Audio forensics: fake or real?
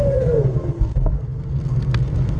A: fake